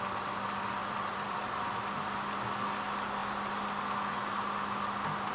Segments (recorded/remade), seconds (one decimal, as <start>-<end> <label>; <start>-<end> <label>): 0.0-0.8 recorded; 0.8-1.9 remade; 1.9-5.3 recorded